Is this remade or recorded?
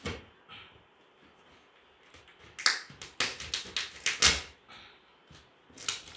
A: recorded